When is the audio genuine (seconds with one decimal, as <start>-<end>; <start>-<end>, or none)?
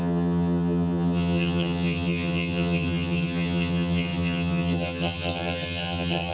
none